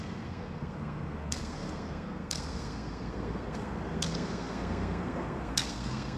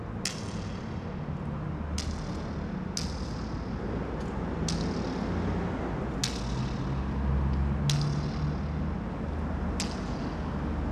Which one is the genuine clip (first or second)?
second